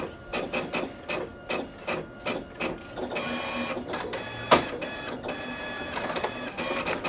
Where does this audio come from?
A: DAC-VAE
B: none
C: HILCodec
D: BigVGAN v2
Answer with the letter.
B